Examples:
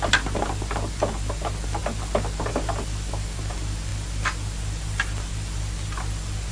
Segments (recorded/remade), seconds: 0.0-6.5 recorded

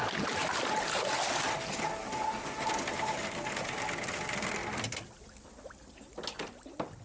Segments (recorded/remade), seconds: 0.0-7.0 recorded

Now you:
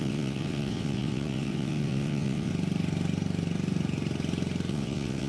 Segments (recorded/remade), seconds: 0.0-2.5 remade; 2.5-4.7 recorded; 4.7-5.3 remade

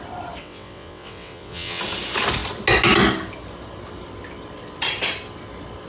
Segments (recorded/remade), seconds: 0.0-0.4 recorded; 0.4-1.8 remade; 1.8-5.9 recorded

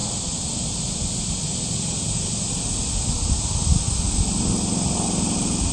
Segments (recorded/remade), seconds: 0.0-5.7 recorded

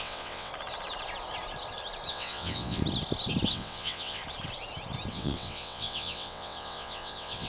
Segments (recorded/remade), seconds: 0.0-0.5 remade; 0.5-2.1 recorded; 2.1-2.8 remade; 2.8-3.5 recorded; 3.5-4.2 remade; 4.2-5.1 recorded; 5.1-7.5 remade